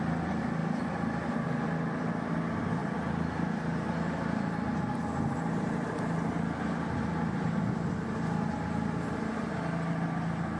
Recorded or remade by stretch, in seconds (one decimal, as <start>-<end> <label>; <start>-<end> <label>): 0.0-10.6 recorded